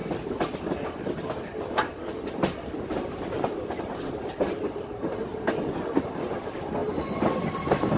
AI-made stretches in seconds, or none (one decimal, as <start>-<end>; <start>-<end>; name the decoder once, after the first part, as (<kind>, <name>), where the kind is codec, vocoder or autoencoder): none